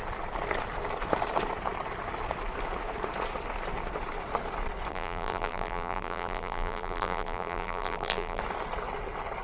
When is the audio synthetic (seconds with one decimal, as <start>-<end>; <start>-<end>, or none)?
4.9-8.4